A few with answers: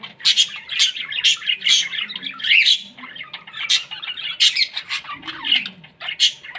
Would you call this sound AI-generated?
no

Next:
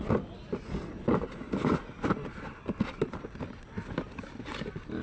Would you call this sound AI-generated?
no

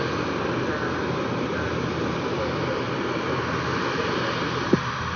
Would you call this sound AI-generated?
no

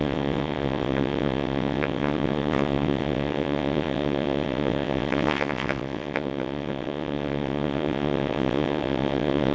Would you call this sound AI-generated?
yes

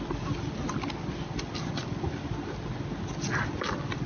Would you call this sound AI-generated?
no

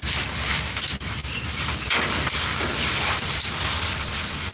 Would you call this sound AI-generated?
no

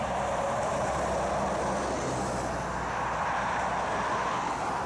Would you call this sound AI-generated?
no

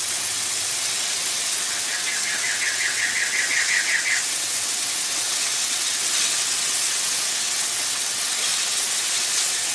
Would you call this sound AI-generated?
yes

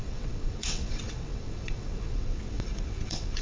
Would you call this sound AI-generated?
yes